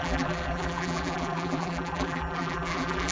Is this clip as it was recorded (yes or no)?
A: no